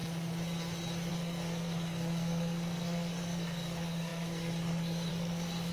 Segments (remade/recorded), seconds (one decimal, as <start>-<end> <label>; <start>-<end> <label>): 0.0-1.1 recorded; 1.1-5.7 remade